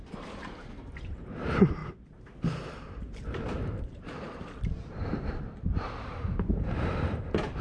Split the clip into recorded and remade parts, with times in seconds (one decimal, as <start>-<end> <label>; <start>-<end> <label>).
0.0-7.6 remade